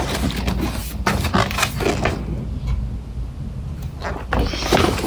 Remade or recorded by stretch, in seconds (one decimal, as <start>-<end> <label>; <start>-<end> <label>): 0.0-5.1 recorded